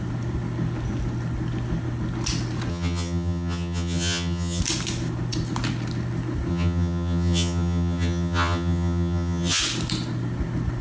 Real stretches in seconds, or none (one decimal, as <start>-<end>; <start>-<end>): 0.0-2.7; 4.6-6.5; 9.6-10.8